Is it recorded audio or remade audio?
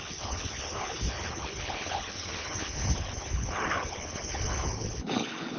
remade